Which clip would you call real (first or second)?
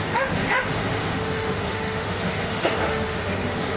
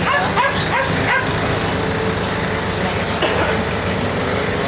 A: second